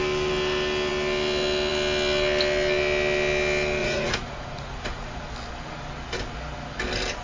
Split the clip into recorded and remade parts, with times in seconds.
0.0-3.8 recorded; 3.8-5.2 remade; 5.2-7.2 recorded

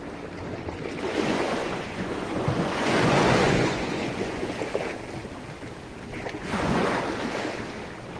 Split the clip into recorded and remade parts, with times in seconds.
0.0-1.1 recorded; 1.1-4.5 remade; 4.5-6.1 recorded; 6.1-7.0 remade; 7.0-8.2 recorded

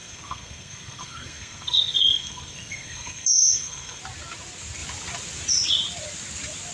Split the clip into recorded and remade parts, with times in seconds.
0.0-4.0 remade; 4.0-6.7 recorded

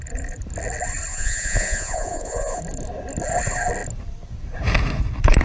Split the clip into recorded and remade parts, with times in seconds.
0.0-1.1 recorded; 1.1-2.6 remade; 2.6-5.4 recorded